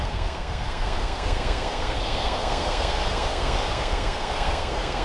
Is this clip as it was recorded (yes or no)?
no